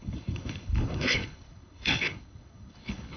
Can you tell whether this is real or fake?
fake